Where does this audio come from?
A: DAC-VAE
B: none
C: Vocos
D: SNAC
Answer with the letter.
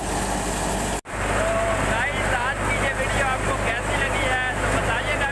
B